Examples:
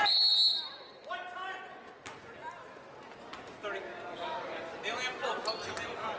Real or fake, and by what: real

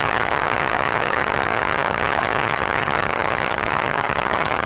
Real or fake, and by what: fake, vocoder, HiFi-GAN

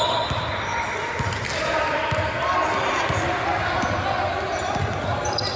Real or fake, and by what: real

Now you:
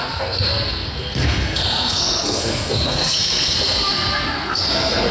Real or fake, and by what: fake, codec, SNAC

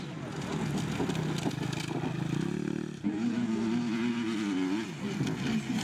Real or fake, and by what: real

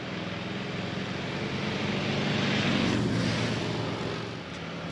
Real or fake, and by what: real